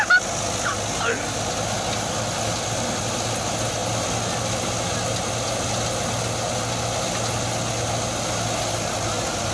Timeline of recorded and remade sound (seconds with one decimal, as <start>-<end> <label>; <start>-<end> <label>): 0.0-9.5 recorded